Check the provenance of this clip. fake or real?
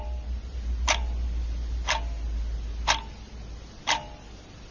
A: real